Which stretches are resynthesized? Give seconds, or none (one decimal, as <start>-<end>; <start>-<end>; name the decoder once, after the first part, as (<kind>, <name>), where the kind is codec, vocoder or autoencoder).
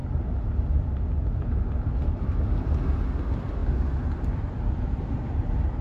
none